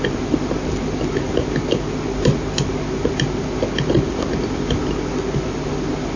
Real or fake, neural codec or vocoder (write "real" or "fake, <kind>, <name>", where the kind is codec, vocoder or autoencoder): real